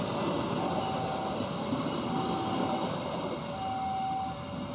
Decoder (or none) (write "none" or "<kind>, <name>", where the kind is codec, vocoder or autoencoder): none